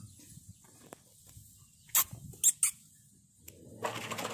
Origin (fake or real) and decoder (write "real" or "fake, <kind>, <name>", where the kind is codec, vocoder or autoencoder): real